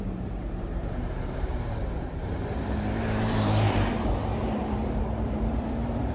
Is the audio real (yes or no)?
no